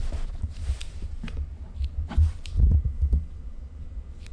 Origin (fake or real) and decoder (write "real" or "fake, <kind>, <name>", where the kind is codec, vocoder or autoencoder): fake, vocoder, BigVGAN v2